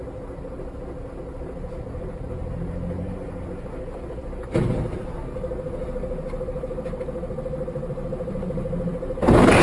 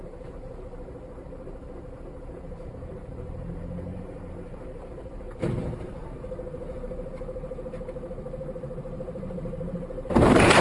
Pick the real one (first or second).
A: first